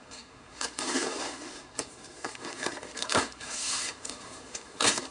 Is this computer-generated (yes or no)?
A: yes